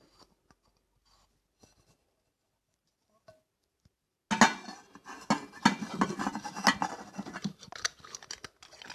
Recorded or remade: recorded